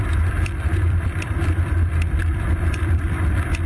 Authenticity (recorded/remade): remade